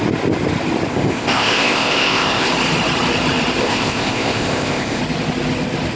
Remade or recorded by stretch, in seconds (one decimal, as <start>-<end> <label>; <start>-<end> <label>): 0.0-0.9 recorded; 0.9-2.5 remade; 2.5-3.6 recorded; 3.6-5.0 remade; 5.0-6.0 recorded